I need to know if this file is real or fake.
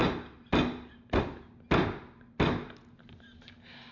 real